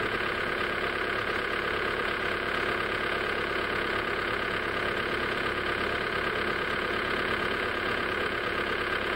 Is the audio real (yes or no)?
no